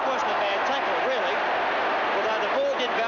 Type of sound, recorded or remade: recorded